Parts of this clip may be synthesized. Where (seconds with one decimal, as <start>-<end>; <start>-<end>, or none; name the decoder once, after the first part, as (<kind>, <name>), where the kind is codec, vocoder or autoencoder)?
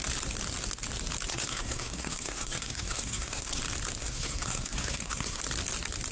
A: 1.3-3.6 (codec, SNAC); 4.0-5.4